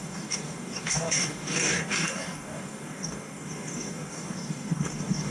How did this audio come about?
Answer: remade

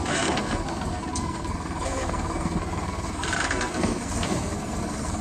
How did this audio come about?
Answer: remade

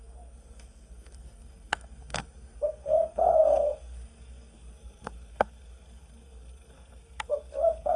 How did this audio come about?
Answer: remade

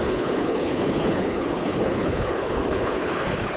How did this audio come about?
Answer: remade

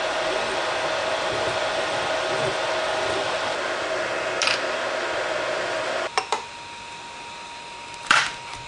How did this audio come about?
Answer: recorded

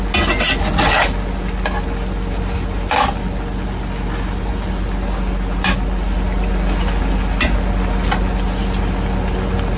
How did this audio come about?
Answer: recorded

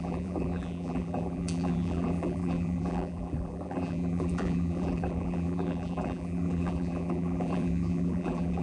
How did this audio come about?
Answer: remade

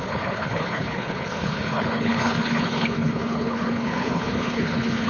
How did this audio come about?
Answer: remade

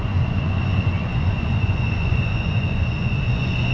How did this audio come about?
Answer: remade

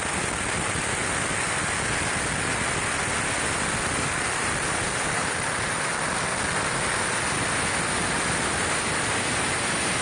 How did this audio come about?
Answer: recorded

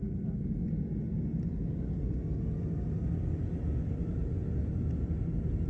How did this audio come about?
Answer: recorded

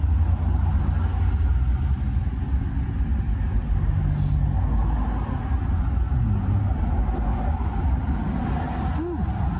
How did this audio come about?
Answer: recorded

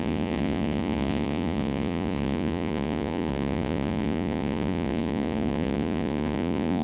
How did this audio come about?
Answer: remade